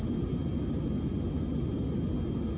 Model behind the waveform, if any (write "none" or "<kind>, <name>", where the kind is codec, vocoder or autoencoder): none